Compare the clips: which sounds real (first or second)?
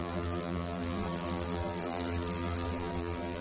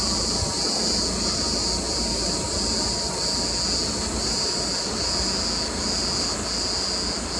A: second